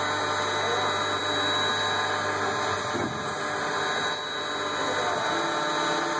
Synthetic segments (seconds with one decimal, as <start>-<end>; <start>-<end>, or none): none